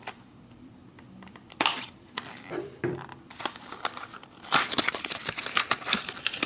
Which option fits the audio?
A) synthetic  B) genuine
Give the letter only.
A